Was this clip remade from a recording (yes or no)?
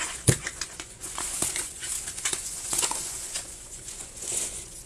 yes